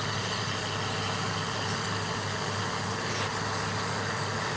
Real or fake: real